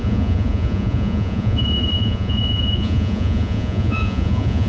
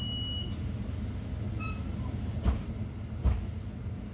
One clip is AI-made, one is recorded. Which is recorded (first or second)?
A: second